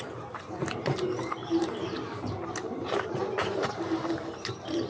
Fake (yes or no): yes